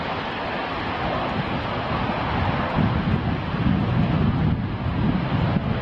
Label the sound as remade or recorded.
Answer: recorded